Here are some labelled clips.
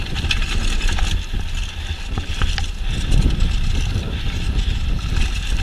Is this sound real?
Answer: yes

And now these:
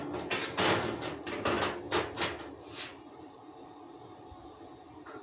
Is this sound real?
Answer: yes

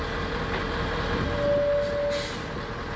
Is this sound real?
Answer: yes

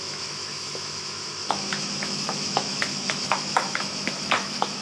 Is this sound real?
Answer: no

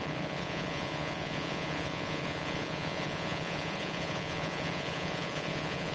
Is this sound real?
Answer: no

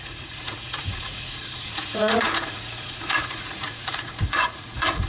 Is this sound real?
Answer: no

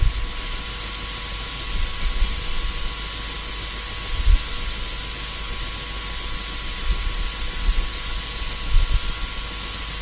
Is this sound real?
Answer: yes